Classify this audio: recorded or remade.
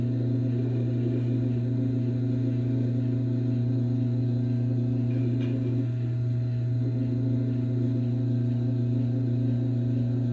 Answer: recorded